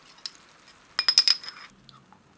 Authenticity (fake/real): real